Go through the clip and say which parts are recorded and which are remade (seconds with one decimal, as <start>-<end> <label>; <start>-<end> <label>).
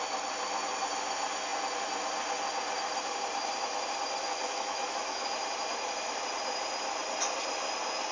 0.0-4.3 recorded; 4.3-5.3 remade; 5.3-8.1 recorded